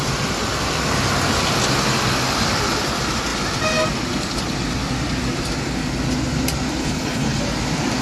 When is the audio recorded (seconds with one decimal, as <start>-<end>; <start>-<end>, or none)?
0.0-6.8; 7.4-8.0